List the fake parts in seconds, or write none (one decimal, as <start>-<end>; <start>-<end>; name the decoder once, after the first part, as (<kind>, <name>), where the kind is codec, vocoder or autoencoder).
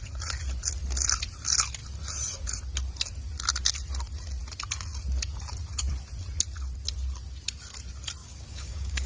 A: 8.2-9.1 (codec, DAC)